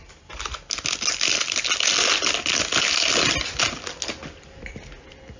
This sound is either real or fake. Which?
real